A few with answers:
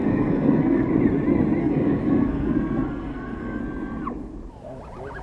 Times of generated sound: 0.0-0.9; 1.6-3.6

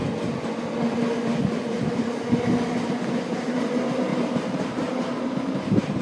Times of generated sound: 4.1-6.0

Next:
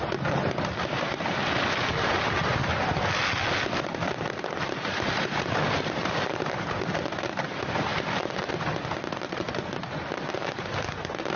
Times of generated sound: 0.0-2.6; 3.8-11.4